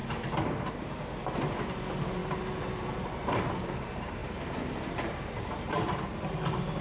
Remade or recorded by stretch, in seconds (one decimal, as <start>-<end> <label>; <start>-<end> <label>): 0.0-0.7 recorded; 0.7-4.2 remade; 4.2-4.8 recorded; 4.8-6.8 remade